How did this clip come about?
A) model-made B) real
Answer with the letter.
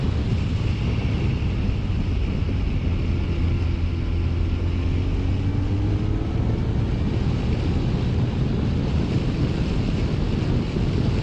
B